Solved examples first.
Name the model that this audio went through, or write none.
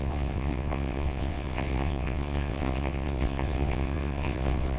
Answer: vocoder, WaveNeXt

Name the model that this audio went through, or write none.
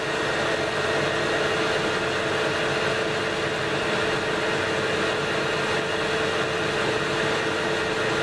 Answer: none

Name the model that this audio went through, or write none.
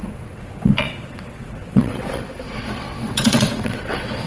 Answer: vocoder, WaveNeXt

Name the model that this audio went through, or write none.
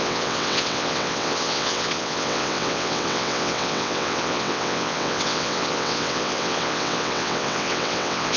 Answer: vocoder, WaveNeXt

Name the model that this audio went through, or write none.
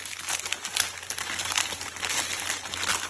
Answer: none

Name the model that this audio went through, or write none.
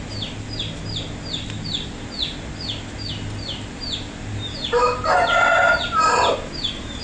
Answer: none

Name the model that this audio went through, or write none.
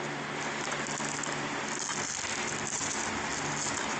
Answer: none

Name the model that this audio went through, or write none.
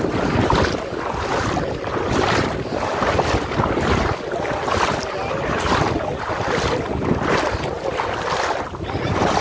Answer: none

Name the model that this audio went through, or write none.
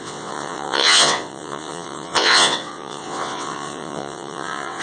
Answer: vocoder, WaveNeXt